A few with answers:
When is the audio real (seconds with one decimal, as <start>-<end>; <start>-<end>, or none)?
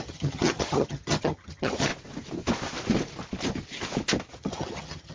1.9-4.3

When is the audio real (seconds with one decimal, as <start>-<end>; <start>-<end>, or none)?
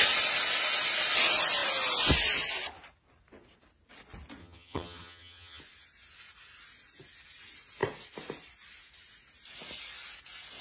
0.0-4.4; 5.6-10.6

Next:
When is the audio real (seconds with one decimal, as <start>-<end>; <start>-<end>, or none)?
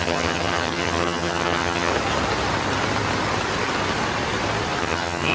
1.9-4.8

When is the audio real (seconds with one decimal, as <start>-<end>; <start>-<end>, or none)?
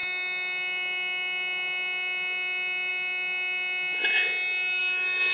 0.0-5.3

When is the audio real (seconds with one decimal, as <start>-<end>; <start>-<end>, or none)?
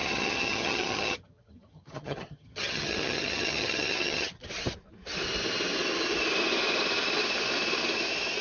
4.4-8.4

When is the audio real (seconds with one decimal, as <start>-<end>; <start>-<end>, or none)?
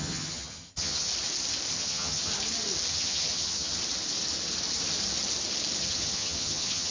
1.1-1.7; 2.3-2.9; 3.8-5.8